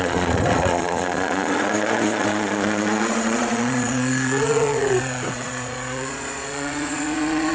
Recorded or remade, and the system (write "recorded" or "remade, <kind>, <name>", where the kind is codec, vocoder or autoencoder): remade, vocoder, Vocos